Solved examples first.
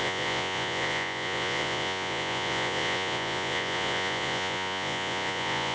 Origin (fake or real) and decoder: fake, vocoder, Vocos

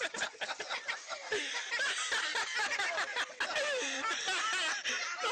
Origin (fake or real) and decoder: real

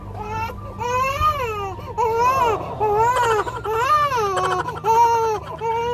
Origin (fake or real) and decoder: real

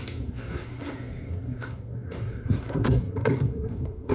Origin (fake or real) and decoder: fake, codec, SNAC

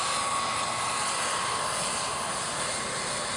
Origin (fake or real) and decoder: real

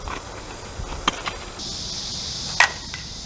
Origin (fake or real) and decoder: real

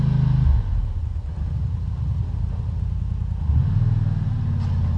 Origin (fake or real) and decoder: real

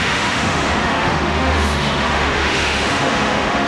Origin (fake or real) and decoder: fake, autoencoder, DAC-VAE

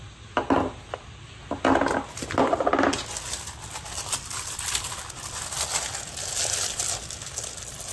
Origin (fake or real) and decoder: real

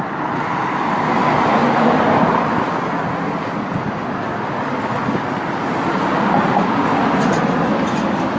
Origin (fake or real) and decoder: real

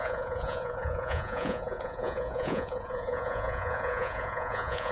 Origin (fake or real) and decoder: fake, vocoder, Vocos